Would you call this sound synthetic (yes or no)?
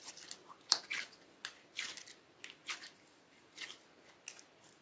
no